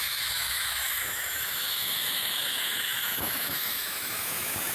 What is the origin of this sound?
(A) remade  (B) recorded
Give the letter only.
A